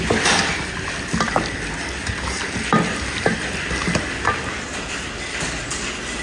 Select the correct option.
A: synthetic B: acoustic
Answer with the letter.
B